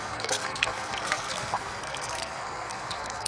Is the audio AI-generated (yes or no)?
yes